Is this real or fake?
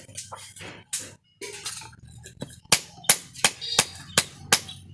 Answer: real